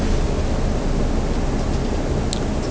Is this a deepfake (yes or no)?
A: no